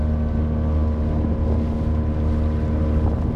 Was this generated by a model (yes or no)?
no